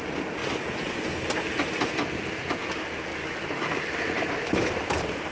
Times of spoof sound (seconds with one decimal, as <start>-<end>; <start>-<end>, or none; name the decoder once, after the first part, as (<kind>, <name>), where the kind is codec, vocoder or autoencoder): 3.1-3.9 (codec, DAC)